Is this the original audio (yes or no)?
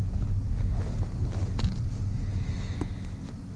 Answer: yes